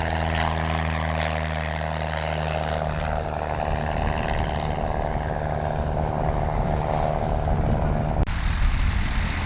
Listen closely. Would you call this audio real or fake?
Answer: real